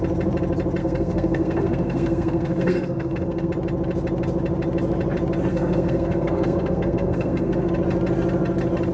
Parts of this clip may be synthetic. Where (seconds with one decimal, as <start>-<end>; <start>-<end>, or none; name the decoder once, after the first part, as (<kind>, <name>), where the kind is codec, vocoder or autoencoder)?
0.8-3.5 (codec, SNAC); 5.5-7.7